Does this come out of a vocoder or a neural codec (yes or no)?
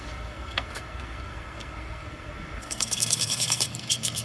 yes